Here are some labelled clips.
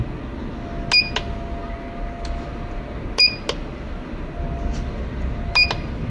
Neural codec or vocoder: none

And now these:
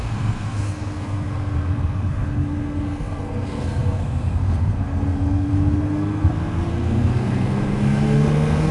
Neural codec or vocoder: codec, SNAC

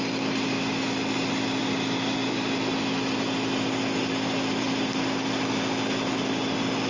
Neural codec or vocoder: none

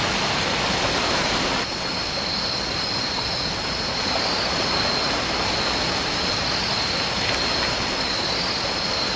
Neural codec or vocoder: none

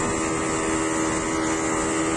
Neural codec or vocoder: none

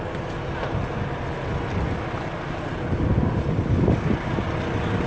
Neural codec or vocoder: none